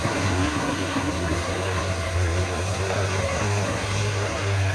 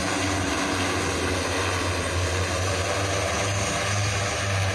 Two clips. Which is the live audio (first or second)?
second